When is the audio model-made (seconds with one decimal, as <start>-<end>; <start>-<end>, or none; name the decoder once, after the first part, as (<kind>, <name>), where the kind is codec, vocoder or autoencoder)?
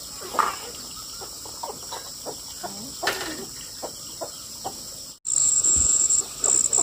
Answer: 5.4-6.2 (vocoder, Vocos)